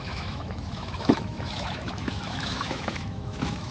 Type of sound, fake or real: fake